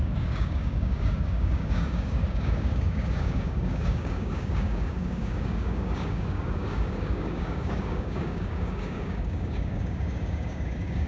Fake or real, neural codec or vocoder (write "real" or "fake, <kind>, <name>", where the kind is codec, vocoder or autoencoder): fake, codec, DAC